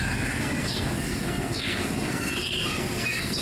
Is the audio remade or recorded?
remade